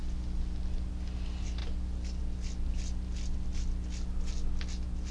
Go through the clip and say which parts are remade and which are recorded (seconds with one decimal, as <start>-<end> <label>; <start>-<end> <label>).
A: 0.0-5.1 recorded